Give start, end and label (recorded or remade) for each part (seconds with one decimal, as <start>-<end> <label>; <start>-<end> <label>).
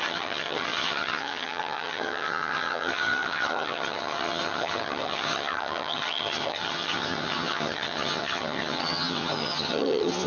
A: 0.0-10.3 remade